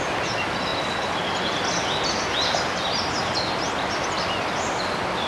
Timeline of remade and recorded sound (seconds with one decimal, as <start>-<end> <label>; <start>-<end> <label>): 0.0-5.3 recorded